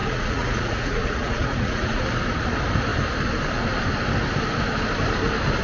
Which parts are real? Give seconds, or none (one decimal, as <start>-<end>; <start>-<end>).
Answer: 2.0-5.6